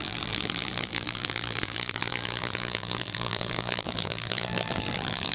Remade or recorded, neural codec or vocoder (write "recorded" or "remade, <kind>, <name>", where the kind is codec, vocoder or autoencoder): remade, vocoder, BigVGAN v2